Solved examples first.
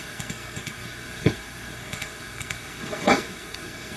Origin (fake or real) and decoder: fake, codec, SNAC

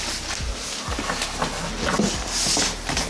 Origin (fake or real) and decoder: real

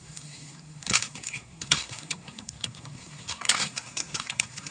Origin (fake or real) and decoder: fake, codec, SNAC